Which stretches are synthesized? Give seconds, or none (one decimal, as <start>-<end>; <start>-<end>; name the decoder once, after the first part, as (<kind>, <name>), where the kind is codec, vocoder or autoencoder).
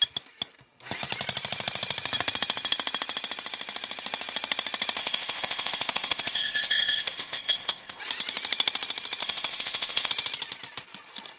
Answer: 5.0-8.0 (codec, ZipCodec); 9.2-10.1